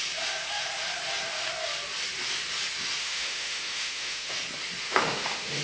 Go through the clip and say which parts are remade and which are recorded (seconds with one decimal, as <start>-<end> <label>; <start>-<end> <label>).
0.0-3.0 recorded; 3.0-4.3 remade; 4.3-4.8 recorded; 4.8-5.6 remade